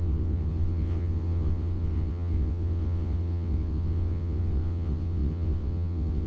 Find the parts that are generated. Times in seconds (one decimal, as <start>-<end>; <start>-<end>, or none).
0.0-6.3